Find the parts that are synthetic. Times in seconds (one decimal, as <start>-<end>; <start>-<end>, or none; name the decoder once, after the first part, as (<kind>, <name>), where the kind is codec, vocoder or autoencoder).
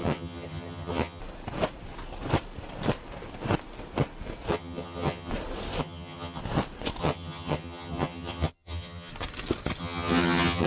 0.0-1.2 (vocoder, HiFi-GAN); 4.5-5.3; 5.8-6.4; 7.0-9.1; 9.8-10.7